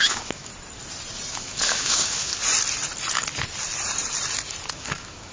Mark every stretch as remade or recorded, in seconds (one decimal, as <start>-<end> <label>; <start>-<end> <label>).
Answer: 0.0-0.5 remade; 0.5-1.3 recorded; 1.3-2.3 remade; 2.3-4.7 recorded; 4.7-5.3 remade